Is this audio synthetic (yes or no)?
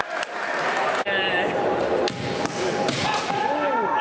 no